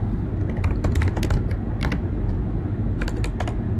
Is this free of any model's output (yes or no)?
yes